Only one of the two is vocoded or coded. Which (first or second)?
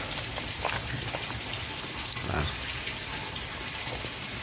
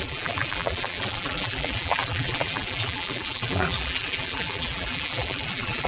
second